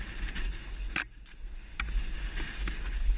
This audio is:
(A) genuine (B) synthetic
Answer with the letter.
A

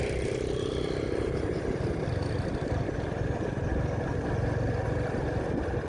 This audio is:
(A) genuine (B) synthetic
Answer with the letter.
A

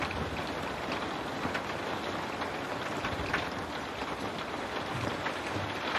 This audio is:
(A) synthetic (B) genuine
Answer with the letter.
B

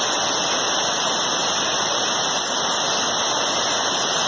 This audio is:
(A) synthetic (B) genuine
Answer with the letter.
B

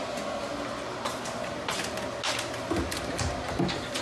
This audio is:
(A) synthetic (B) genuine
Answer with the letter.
B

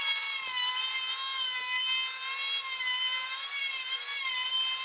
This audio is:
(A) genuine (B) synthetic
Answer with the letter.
A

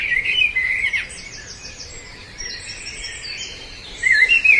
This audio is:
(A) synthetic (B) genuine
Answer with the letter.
A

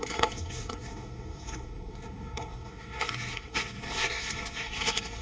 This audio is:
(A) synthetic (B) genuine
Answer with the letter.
A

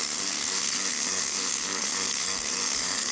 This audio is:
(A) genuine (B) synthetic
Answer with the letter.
B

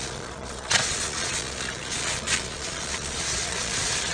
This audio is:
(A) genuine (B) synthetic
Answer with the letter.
B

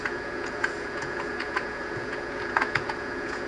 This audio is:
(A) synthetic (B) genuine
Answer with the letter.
A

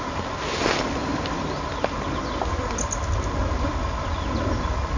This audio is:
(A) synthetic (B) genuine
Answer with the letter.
B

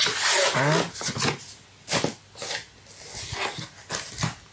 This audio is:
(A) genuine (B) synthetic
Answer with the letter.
A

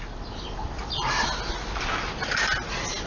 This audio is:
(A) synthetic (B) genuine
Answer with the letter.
B